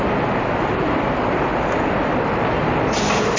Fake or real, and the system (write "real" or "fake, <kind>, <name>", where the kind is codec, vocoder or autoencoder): real